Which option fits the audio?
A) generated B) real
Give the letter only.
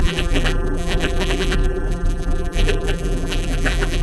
A